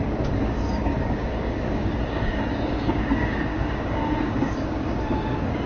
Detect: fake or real fake